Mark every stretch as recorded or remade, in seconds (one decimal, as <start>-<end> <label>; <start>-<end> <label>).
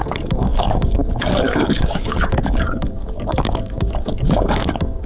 0.0-5.1 remade